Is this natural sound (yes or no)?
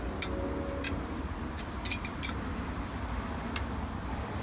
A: yes